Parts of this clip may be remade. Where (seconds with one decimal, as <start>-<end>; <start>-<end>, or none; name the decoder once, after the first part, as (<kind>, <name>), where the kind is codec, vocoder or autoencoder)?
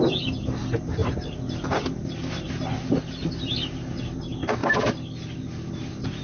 1.0-4.0 (vocoder, BigVGAN v2)